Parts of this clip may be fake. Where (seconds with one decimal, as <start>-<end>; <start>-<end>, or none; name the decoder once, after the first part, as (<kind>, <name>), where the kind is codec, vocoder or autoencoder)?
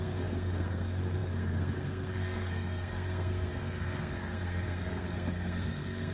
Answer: 0.0-6.1 (codec, SNAC)